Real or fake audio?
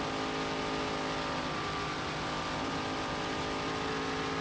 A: real